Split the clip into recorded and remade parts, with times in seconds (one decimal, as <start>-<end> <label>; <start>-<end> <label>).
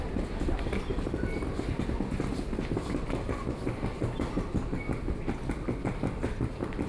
0.0-6.9 recorded